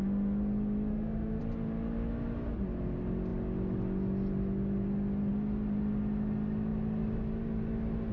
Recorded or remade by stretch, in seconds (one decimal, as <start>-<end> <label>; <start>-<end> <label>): 0.0-0.9 recorded; 0.9-1.4 remade; 1.4-8.1 recorded